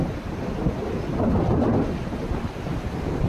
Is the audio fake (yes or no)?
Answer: no